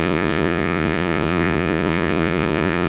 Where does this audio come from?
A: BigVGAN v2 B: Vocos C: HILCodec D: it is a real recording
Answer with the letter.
B